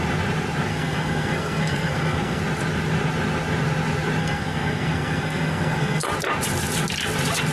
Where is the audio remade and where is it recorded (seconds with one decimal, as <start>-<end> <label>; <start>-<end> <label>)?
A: 0.0-0.7 recorded; 0.7-2.4 remade; 2.4-4.2 recorded; 4.2-6.1 remade; 6.1-7.5 recorded